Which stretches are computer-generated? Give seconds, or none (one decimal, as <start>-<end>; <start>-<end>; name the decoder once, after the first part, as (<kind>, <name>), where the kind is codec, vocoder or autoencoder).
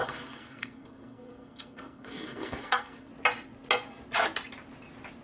0.0-3.1 (codec, SNAC)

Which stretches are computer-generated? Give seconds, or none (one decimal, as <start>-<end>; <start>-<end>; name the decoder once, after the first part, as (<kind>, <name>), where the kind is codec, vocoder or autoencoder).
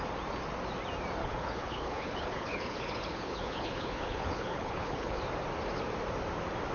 1.2-5.2 (codec, HILCodec)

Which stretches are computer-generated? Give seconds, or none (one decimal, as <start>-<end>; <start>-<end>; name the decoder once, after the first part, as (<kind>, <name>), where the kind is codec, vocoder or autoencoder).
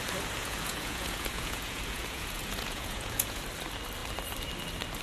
0.4-3.4 (vocoder, Vocos)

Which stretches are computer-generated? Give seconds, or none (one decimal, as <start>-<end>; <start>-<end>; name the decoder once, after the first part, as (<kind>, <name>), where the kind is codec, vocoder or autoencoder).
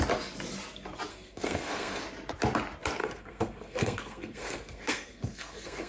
1.1-2.0 (codec, SNAC); 3.0-5.9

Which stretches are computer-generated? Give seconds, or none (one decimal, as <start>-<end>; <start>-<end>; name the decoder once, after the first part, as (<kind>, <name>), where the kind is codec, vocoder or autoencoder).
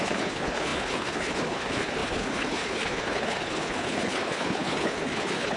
0.0-5.6 (codec, HILCodec)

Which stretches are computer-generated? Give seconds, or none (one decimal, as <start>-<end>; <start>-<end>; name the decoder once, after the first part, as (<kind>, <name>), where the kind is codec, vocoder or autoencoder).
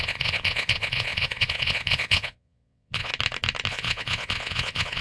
0.0-3.1 (vocoder, Vocos); 3.7-5.0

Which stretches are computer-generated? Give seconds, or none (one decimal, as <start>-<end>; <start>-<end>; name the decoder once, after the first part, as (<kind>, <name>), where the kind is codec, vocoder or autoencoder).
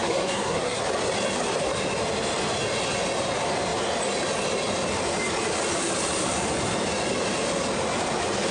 0.0-0.8 (codec, SNAC)